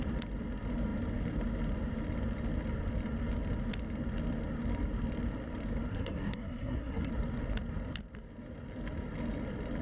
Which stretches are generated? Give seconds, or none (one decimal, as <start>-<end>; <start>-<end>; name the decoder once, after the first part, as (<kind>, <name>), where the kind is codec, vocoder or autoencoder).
5.9-7.1 (codec, SNAC)